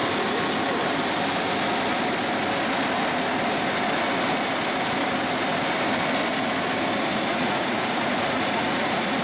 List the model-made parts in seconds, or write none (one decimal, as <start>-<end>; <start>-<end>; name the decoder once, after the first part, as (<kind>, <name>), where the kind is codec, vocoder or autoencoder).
7.3-9.2 (vocoder, Vocos)

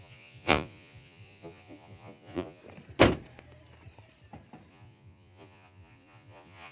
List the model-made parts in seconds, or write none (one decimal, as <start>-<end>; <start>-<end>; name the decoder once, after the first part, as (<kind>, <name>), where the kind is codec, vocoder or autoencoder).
0.0-2.6 (vocoder, Vocos); 4.7-6.7

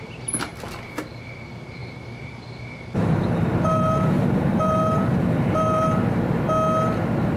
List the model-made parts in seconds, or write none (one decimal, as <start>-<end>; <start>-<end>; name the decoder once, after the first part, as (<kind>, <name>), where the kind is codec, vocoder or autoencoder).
1.8-6.2 (vocoder, BigVGAN v2)

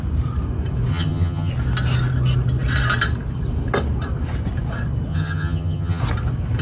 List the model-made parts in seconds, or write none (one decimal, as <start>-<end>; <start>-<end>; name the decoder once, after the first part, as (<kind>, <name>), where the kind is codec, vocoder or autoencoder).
0.9-1.5 (vocoder, HiFi-GAN); 5.1-6.0

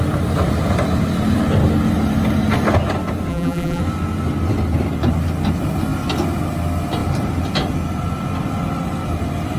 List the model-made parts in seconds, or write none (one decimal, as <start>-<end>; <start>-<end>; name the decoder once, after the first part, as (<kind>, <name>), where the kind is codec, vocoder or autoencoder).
3.3-3.8 (vocoder, BigVGAN v2)